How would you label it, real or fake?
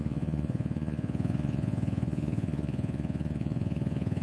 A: fake